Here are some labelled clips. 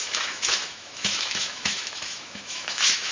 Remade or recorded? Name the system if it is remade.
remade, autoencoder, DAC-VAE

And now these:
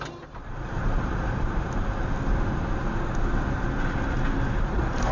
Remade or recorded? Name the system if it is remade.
recorded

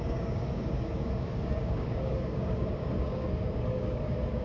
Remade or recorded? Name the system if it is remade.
remade, codec, DAC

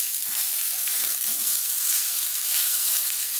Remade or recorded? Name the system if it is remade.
remade, codec, SNAC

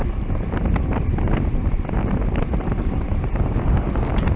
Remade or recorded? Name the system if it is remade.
recorded